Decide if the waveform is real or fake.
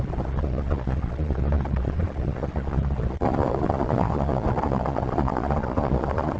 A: fake